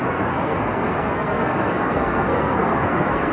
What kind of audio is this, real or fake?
fake